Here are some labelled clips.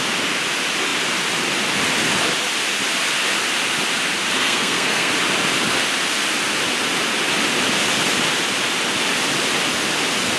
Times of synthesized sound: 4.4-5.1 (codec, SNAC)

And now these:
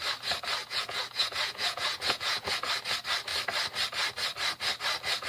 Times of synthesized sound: 0.6-2.7 (vocoder, Vocos)

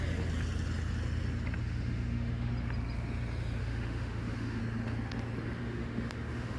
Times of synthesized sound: 1.6-2.5 (autoencoder, DAC-VAE); 3.6-4.6; 5.6-6.6

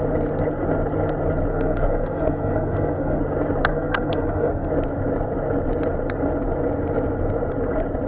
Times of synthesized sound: 1.5-3.2 (codec, SNAC); 3.7-4.7

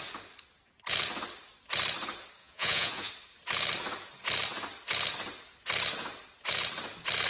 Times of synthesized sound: 2.4-3.1 (vocoder, Vocos)

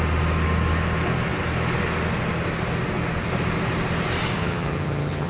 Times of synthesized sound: 4.4-5.3 (vocoder, HiFi-GAN)

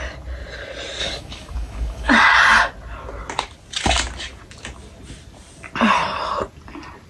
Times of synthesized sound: 1.0-2.1 (codec, DAC)

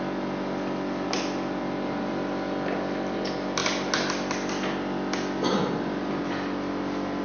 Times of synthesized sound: none